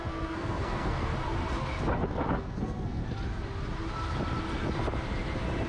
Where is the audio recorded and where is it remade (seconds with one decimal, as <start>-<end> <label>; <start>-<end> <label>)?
0.0-1.1 remade; 1.1-1.9 recorded; 1.9-3.0 remade; 3.0-5.7 recorded